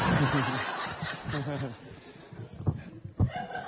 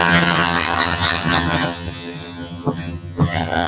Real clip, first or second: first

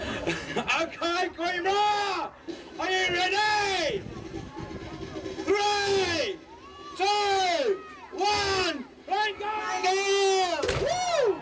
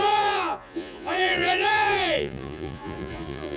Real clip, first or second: first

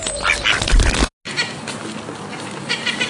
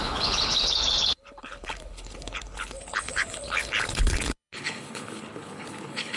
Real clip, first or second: first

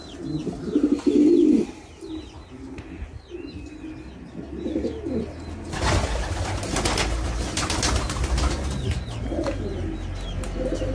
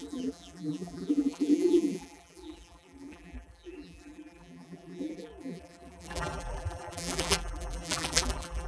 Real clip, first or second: first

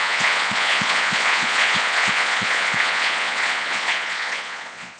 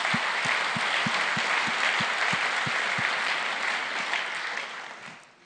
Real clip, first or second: second